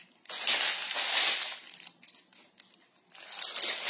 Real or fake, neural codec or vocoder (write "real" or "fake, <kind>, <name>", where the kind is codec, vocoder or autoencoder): real